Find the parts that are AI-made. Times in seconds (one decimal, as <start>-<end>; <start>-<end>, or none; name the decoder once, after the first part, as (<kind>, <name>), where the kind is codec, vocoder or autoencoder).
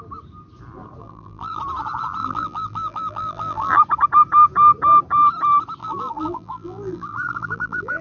1.0-1.6 (vocoder, BigVGAN v2); 2.2-3.8; 5.8-8.0